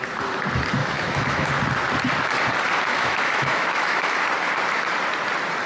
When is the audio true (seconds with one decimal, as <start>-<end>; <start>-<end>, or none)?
0.0-0.8; 1.5-2.9; 4.1-5.7